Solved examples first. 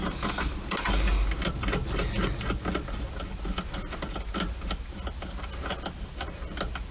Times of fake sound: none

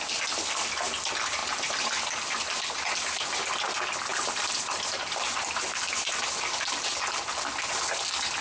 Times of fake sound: none

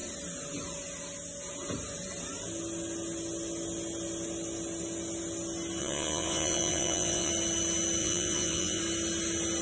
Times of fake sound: 5.8-7.3 (vocoder, Vocos); 8.0-8.8

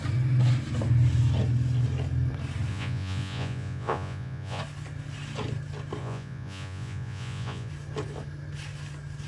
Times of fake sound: 2.7-4.6 (vocoder, Vocos); 6.0-7.7